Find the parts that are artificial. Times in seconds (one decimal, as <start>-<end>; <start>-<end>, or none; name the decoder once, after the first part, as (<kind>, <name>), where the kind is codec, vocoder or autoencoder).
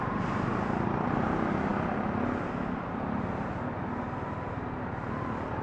none